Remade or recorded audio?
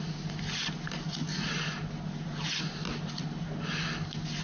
recorded